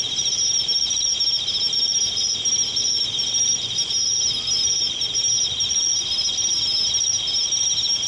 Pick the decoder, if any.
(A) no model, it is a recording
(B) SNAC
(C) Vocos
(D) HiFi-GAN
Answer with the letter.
A